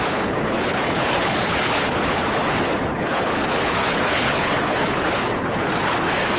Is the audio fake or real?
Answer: fake